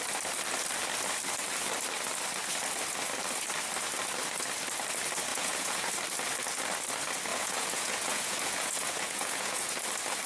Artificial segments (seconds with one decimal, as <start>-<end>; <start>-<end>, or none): 5.3-5.9; 7.3-9.7